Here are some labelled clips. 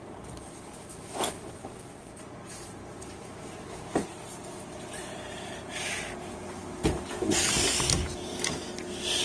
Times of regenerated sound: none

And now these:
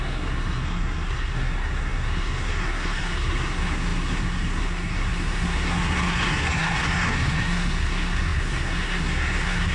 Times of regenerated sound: 0.0-9.7 (codec, SNAC)

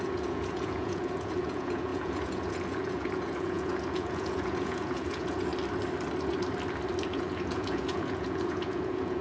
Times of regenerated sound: 0.0-5.5 (vocoder, Vocos); 7.1-9.2

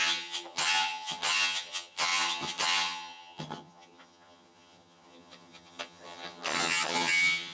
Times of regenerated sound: 0.0-7.5 (vocoder, HiFi-GAN)

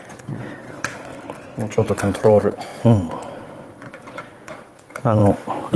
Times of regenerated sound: 0.0-1.1 (vocoder, Vocos); 1.9-5.8

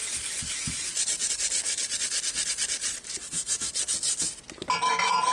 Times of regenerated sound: 3.2-3.7 (autoencoder, DAC-VAE)